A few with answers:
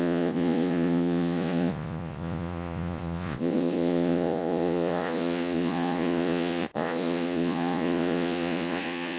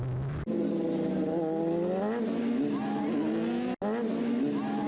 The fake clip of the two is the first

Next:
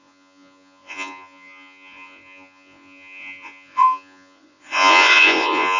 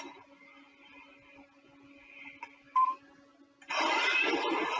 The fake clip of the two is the first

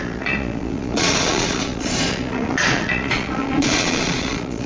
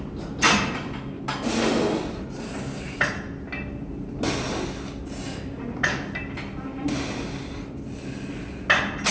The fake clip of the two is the first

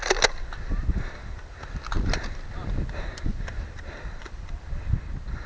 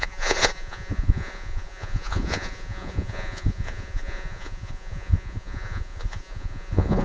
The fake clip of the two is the second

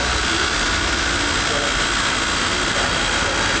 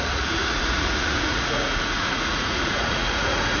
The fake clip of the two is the second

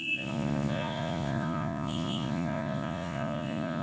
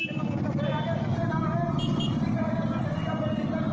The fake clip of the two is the first